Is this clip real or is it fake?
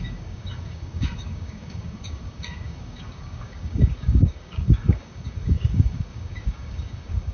fake